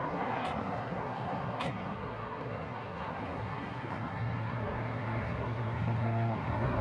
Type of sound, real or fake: fake